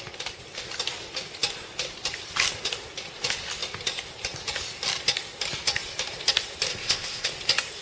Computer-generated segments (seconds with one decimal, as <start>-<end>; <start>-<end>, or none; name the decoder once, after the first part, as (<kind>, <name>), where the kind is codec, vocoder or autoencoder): 6.7-7.3 (codec, ZipCodec)